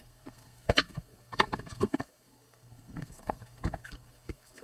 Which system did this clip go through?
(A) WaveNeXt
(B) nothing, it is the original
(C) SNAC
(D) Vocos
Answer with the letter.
C